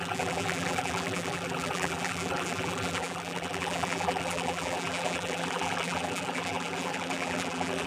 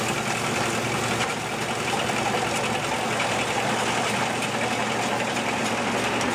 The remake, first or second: first